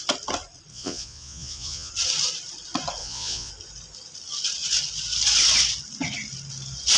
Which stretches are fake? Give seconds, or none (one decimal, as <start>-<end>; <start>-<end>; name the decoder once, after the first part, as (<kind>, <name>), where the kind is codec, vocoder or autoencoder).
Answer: 0.7-1.9 (vocoder, Vocos); 3.0-3.5